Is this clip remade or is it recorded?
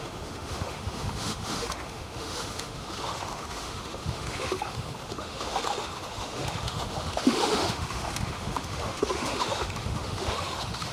remade